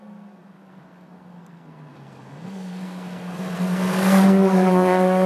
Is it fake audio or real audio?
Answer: fake